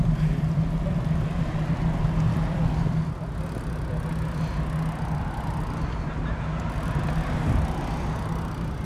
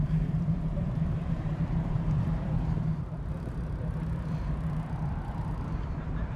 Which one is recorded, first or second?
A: first